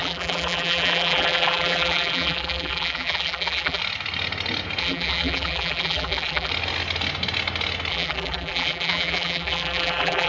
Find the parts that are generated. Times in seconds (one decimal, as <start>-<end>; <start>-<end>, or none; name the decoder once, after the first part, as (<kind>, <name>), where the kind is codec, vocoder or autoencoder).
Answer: 0.0-3.8 (vocoder, BigVGAN v2); 4.8-6.5; 7.9-10.3